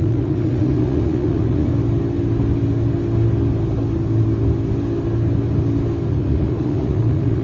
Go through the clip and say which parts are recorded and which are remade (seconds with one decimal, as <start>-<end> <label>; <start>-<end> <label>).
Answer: 0.0-1.7 remade; 1.7-6.1 recorded; 6.1-7.4 remade